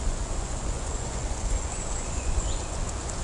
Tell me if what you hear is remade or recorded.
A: remade